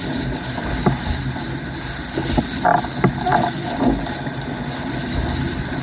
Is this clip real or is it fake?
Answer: real